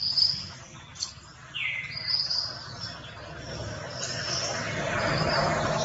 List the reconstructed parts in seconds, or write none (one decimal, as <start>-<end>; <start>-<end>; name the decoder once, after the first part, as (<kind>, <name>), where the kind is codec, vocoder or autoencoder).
none

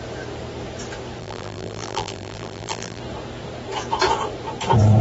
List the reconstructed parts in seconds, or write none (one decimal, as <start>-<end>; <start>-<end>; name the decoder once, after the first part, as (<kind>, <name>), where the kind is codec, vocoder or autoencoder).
1.2-3.0 (vocoder, BigVGAN v2)